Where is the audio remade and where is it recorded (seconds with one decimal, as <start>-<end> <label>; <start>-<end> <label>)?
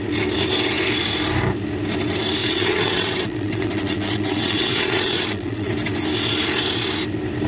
0.0-2.4 recorded; 2.4-5.7 remade; 5.7-7.5 recorded